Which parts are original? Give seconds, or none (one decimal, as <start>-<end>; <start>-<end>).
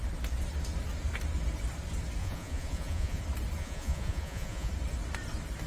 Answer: 0.0-2.2; 3.2-3.6; 4.7-5.7